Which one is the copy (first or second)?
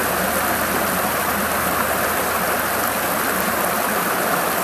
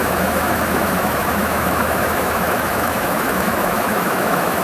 second